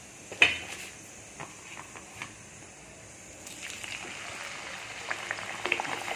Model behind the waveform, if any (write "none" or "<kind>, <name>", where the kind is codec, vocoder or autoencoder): none